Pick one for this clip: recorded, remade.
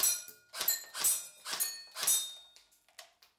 recorded